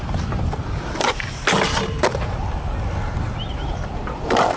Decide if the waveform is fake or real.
fake